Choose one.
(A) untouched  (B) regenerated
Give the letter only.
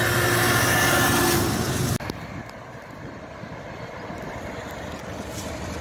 A